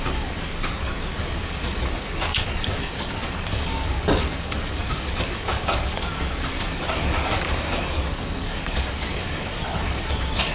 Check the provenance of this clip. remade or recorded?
remade